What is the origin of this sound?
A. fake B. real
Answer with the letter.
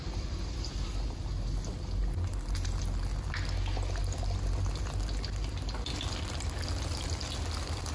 B